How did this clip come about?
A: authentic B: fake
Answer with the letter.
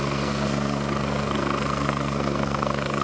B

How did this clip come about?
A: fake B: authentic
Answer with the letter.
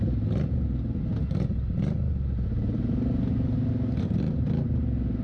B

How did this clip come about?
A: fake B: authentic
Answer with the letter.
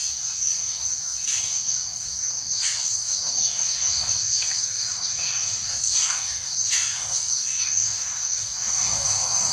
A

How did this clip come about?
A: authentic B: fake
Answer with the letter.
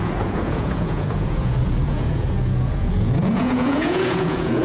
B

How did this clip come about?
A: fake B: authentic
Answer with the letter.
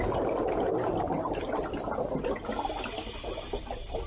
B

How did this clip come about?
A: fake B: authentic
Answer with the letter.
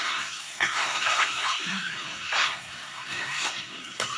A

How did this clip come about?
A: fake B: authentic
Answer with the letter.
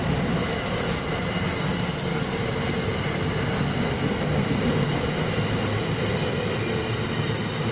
B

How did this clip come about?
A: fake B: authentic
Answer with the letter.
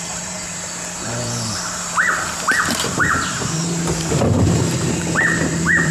A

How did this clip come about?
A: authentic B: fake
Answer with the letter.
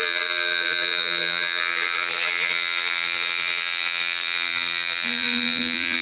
B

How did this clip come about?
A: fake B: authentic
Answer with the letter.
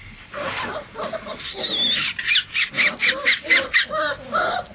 B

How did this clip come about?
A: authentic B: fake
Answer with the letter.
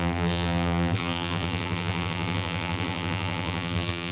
B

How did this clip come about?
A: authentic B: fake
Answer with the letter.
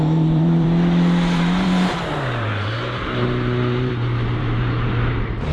B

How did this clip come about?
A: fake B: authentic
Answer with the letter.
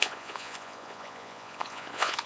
A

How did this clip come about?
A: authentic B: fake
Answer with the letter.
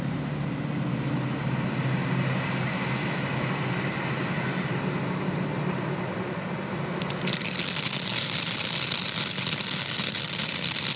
A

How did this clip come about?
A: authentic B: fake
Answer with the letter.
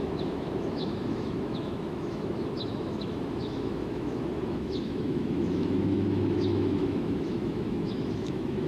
B